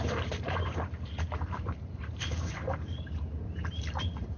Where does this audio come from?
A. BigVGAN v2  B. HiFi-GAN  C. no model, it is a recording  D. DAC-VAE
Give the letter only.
A